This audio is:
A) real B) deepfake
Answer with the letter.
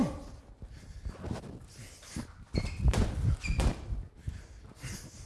A